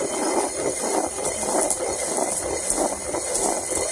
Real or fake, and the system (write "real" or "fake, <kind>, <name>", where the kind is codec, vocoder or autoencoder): real